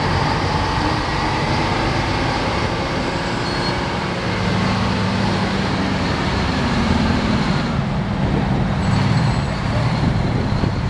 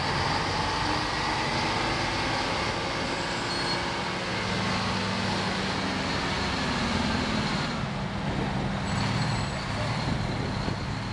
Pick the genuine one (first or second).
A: second